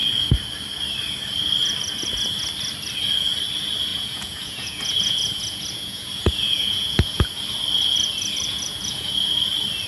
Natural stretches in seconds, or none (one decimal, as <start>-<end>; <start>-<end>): 0.0-3.9; 7.4-8.5; 9.2-9.9